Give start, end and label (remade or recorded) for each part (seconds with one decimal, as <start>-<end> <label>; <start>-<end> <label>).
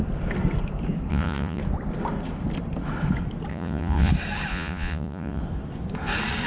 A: 0.0-1.1 recorded; 1.1-1.6 remade; 1.6-3.5 recorded; 3.5-4.1 remade; 4.1-4.5 recorded; 4.5-5.4 remade; 5.4-6.5 recorded